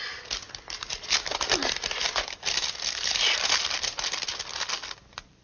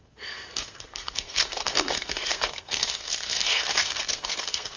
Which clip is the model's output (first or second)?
second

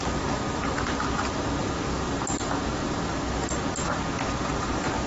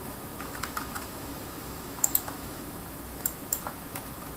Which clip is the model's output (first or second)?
second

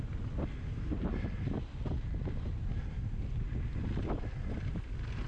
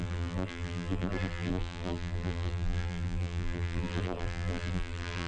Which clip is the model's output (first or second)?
second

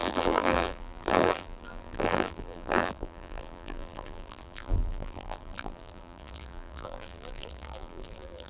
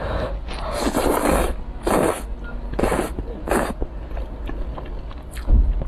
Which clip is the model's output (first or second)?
first